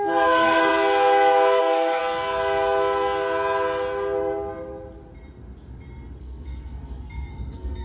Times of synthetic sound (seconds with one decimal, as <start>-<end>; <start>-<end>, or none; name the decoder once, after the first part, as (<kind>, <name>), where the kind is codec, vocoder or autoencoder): 0.0-0.7 (codec, SNAC); 1.6-2.0; 6.2-7.8